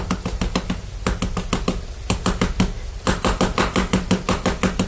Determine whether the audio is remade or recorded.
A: recorded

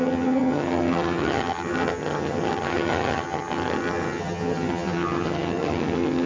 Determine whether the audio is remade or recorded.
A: remade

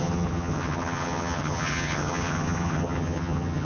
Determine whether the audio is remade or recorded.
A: remade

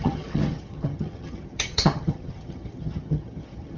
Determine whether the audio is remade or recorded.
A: remade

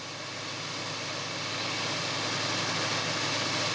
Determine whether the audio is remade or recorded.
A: recorded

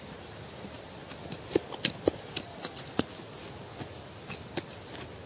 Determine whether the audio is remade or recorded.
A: recorded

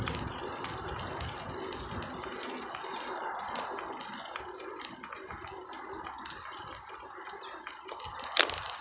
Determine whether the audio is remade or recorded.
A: recorded